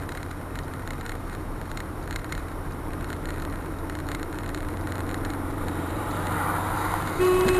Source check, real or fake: fake